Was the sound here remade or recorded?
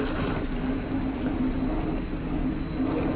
recorded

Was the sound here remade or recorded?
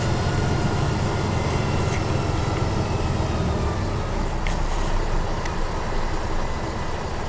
recorded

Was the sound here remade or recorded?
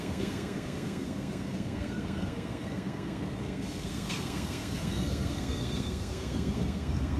remade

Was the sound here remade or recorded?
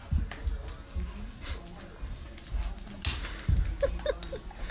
recorded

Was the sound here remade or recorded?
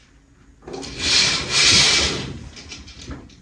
recorded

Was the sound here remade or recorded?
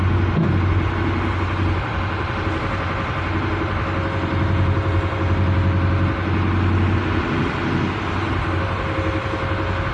recorded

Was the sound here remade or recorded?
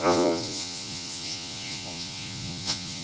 remade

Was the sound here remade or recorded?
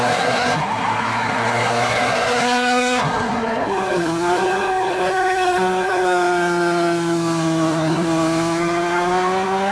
remade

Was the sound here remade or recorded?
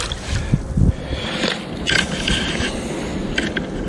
recorded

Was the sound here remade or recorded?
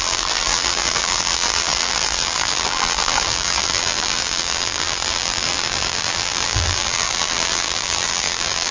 remade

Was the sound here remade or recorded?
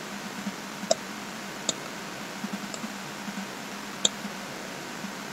recorded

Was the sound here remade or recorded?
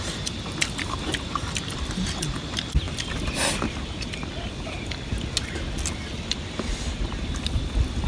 recorded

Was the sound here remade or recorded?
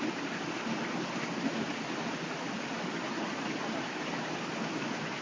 recorded